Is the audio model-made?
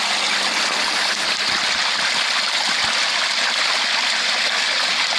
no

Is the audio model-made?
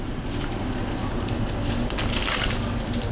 no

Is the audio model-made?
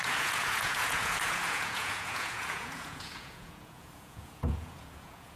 yes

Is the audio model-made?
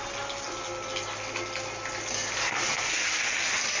no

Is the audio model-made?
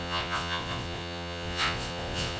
yes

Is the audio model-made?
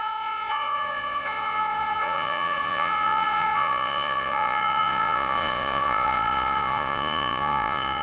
yes